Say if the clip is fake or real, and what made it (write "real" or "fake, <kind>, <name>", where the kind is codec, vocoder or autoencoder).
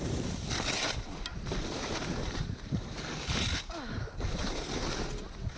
real